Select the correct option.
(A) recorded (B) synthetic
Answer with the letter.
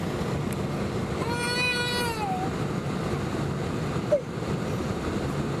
A